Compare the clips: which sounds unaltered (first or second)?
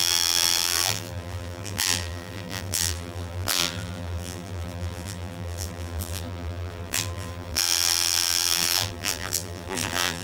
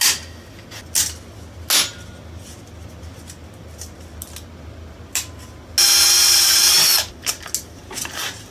second